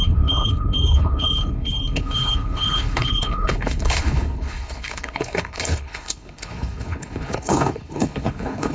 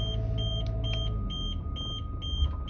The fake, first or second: first